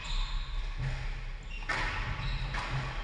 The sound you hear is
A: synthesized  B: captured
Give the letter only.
B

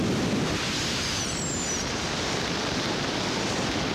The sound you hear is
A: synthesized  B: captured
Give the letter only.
B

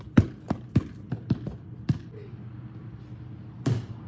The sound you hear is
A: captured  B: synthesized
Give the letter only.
A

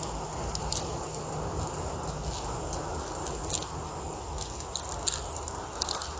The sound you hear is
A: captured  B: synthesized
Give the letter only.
A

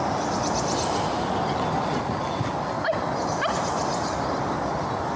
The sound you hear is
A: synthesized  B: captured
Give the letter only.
B